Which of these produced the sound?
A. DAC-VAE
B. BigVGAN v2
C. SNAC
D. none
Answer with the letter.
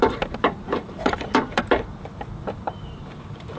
B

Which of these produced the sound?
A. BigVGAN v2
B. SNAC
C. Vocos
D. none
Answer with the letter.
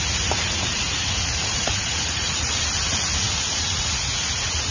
C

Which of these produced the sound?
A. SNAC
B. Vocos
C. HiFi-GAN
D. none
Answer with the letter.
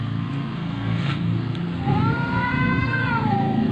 A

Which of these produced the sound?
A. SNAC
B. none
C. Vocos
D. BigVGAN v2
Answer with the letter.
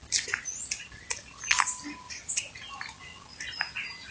B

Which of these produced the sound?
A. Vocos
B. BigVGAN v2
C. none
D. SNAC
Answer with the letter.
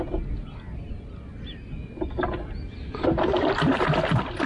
C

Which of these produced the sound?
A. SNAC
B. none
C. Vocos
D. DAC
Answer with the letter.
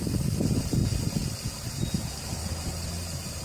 B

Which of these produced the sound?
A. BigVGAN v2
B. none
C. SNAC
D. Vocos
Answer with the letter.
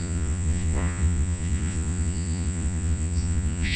D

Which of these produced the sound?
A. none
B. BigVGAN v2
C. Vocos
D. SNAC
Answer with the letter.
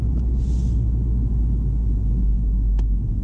A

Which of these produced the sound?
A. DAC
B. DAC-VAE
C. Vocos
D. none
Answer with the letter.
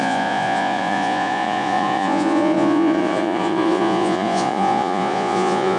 C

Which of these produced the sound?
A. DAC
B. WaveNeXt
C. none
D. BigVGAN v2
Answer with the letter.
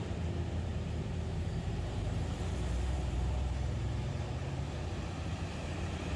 D